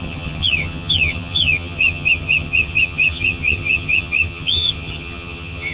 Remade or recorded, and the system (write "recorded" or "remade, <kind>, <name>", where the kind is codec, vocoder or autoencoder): remade, vocoder, HiFi-GAN